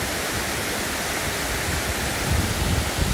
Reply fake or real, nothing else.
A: real